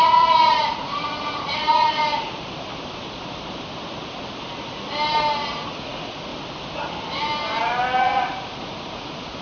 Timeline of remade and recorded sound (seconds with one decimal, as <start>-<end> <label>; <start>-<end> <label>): 0.0-2.0 remade; 2.0-5.7 recorded; 5.7-6.3 remade; 6.3-8.0 recorded; 8.0-9.4 remade